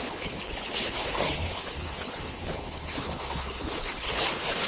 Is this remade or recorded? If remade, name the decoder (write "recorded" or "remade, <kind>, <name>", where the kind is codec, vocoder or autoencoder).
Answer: remade, codec, HILCodec